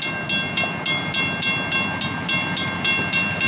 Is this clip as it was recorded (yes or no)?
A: yes